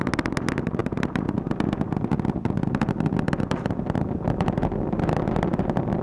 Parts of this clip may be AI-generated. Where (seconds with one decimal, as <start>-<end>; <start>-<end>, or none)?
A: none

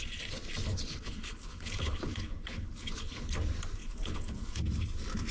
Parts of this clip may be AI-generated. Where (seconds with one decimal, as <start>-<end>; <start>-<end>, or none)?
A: 0.7-3.3; 3.8-4.6

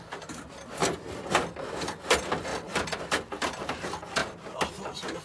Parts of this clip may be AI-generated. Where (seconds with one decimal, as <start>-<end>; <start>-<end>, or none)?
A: none

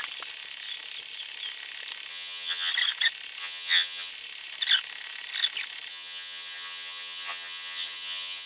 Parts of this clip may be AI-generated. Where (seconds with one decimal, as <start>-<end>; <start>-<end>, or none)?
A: 2.1-2.7; 3.4-4.1; 5.9-8.5

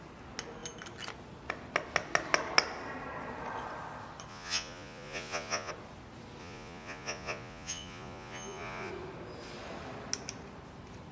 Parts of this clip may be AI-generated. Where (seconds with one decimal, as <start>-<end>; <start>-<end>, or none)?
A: 4.3-5.7; 6.4-8.9